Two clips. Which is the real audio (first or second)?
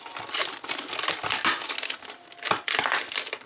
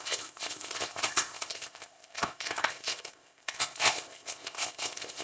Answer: first